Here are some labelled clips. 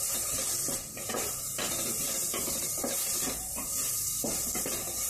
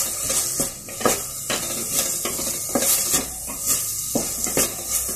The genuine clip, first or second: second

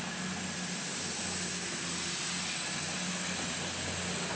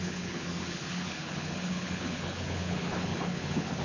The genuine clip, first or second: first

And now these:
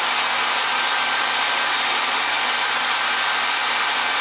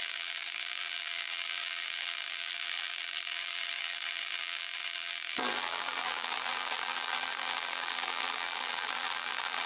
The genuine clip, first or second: first